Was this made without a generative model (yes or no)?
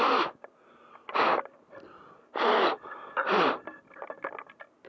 yes